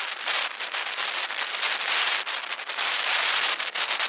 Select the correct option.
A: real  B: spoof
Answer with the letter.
A